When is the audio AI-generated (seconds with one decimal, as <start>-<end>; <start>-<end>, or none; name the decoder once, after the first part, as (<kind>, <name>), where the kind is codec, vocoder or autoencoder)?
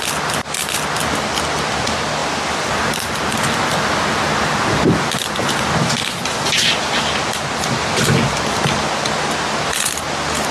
2.2-5.4 (vocoder, BigVGAN v2)